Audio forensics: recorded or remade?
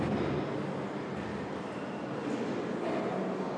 recorded